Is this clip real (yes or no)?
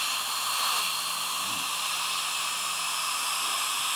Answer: yes